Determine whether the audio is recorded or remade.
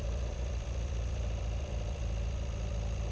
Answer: remade